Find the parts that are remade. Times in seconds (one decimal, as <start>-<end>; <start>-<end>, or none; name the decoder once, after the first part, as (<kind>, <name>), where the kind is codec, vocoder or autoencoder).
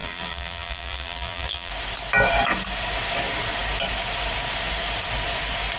0.0-1.7 (vocoder, BigVGAN v2)